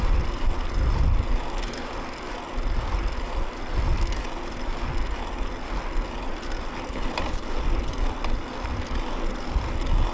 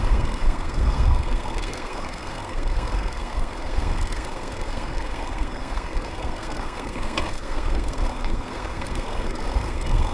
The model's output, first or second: second